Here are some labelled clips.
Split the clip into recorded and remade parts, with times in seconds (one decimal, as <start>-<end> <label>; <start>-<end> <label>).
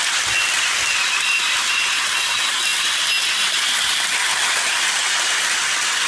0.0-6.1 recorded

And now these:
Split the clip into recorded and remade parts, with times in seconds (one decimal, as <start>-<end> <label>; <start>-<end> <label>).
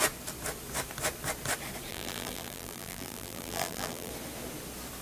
0.0-1.9 recorded; 1.9-4.1 remade; 4.1-5.0 recorded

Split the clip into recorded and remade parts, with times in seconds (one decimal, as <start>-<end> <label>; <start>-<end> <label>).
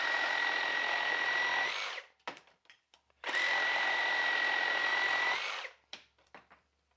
0.0-1.5 recorded; 1.5-3.9 remade; 3.9-4.9 recorded; 4.9-7.0 remade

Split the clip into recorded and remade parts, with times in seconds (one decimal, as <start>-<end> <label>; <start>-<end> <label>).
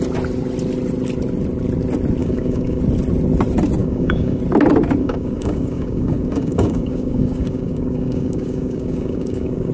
0.0-2.2 recorded; 2.2-2.8 remade; 2.8-3.8 recorded; 3.8-4.4 remade; 4.4-5.0 recorded; 5.0-9.7 remade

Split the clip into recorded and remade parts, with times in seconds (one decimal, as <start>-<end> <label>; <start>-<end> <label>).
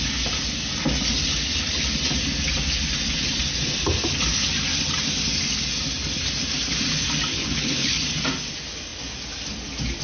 0.0-7.3 recorded; 7.3-8.0 remade; 8.0-10.0 recorded